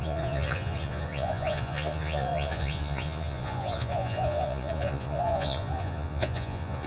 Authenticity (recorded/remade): remade